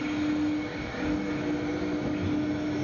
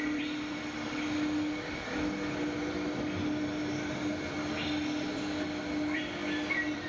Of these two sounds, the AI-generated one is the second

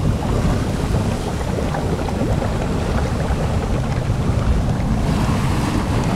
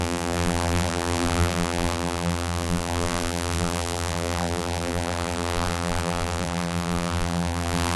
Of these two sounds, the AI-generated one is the second